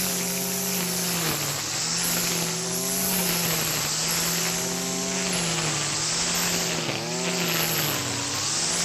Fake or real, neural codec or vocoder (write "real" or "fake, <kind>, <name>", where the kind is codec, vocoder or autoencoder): real